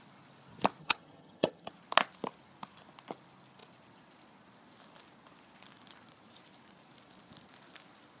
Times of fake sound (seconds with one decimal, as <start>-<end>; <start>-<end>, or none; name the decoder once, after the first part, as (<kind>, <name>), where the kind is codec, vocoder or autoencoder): 0.8-1.7 (vocoder, HiFi-GAN)